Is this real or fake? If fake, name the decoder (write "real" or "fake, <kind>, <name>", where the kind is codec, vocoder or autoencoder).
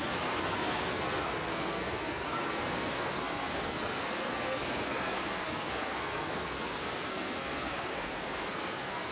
fake, codec, SNAC